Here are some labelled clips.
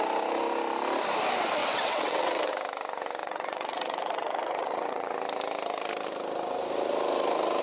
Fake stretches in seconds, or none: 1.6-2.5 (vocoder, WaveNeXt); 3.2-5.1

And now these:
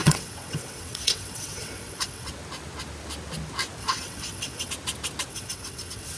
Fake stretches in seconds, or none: 0.0-2.3 (vocoder, WaveNeXt); 3.8-4.7; 5.3-6.2

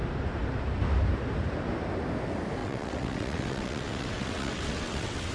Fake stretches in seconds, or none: 2.6-5.3 (vocoder, WaveNeXt)

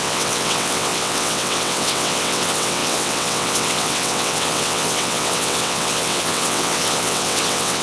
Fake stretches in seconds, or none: 0.0-7.8 (vocoder, WaveNeXt)

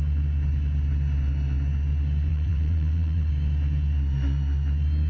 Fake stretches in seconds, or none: 2.3-3.3 (vocoder, WaveNeXt)